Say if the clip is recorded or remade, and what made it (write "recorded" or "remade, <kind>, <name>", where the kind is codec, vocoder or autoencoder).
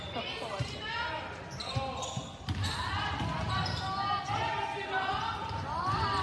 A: recorded